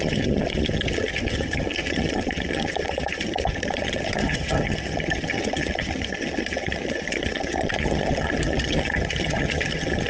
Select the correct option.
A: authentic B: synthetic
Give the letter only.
B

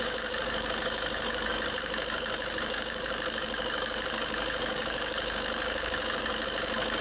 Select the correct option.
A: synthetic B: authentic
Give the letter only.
A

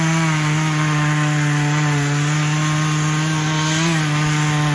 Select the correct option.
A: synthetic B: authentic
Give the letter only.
B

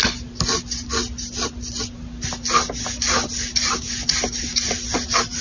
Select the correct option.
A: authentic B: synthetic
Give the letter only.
A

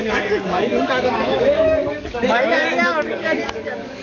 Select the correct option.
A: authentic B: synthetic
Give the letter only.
B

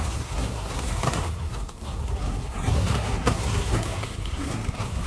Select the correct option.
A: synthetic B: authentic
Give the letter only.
A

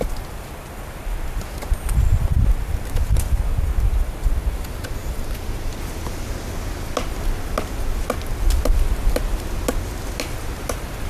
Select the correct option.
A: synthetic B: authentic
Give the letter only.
B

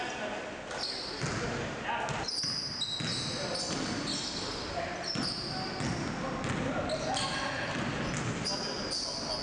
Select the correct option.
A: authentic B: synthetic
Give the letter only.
A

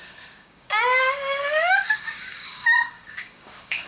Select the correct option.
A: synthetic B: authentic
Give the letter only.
A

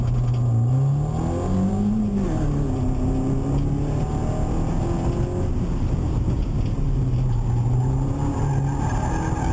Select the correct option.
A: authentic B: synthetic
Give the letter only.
A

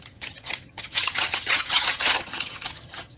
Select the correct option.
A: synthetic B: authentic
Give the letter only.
A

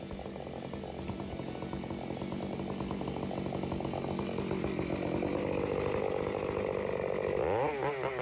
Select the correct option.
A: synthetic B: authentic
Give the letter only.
B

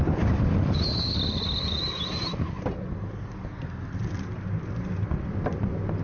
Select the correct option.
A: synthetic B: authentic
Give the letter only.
B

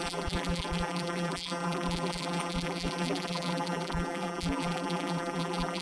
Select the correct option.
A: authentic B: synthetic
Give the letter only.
B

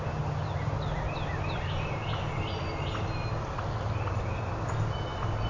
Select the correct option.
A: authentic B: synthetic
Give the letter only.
A